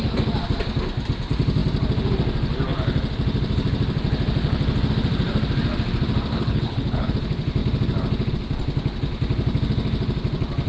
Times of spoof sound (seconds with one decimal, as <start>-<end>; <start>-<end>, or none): 6.3-7.1